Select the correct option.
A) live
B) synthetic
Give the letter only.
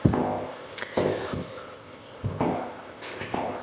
B